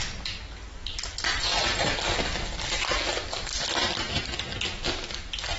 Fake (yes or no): no